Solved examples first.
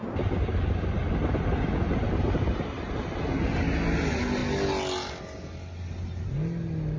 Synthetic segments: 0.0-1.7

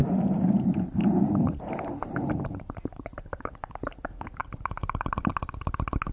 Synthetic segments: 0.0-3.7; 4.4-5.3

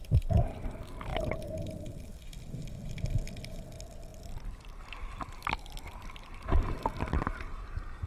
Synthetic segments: none